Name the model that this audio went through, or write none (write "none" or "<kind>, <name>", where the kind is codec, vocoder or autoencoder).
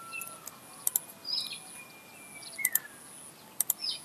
none